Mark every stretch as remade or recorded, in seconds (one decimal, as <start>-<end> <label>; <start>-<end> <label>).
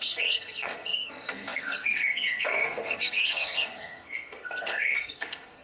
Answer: 0.0-5.6 remade